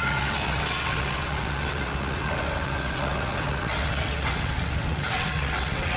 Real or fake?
fake